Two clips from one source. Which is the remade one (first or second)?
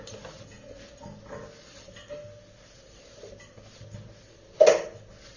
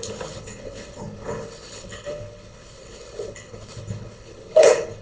second